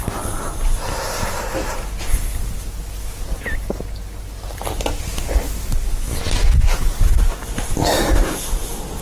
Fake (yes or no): no